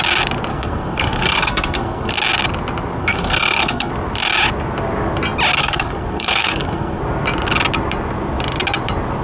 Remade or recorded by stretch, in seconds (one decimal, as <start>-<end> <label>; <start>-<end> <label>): 0.0-0.5 recorded; 0.5-2.1 remade; 2.1-3.0 recorded; 3.0-3.9 remade; 3.9-5.6 recorded; 5.6-7.0 remade; 7.0-9.2 recorded